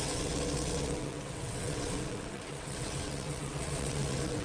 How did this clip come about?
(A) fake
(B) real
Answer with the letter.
A